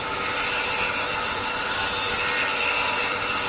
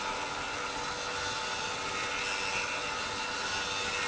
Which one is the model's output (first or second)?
first